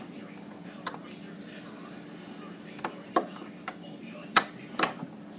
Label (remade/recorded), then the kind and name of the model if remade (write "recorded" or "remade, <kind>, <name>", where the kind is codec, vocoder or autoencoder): remade, vocoder, BigVGAN v2